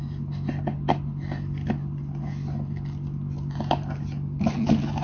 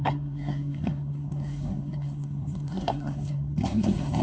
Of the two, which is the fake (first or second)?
second